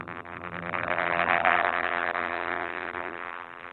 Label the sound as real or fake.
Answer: fake